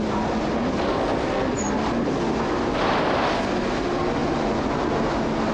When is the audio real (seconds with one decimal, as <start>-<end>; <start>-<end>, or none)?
0.0-4.2; 4.9-5.5